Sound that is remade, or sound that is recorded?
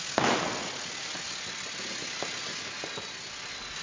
recorded